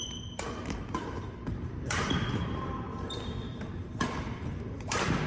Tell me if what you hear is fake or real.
fake